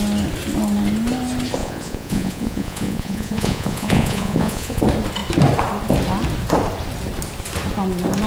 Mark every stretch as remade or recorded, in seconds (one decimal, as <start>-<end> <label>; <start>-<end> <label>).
0.0-1.6 recorded; 1.6-4.8 remade; 4.8-8.3 recorded